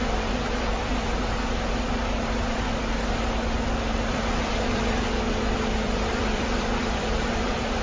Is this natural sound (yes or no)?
no